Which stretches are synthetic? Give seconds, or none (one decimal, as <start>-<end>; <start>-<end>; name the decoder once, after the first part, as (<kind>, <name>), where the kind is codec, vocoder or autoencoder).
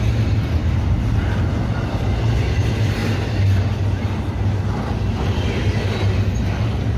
0.6-1.2 (vocoder, BigVGAN v2)